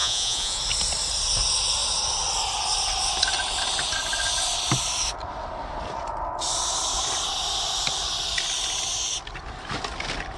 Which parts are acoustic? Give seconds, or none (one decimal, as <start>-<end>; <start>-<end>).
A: 0.6-10.4